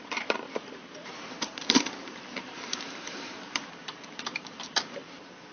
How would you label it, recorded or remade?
remade